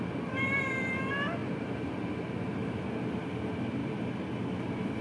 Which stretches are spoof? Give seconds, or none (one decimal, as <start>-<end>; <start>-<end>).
none